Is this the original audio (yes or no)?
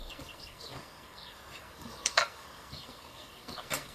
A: no